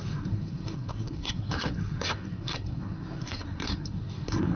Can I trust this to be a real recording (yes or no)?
no